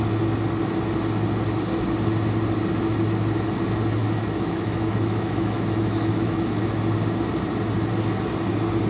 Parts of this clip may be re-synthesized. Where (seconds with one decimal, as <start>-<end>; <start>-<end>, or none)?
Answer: 4.0-6.7